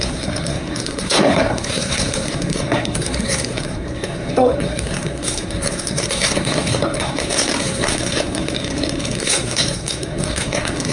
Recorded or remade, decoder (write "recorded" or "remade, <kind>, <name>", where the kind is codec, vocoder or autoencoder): remade, codec, SNAC